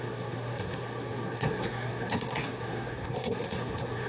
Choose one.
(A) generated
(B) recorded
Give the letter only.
A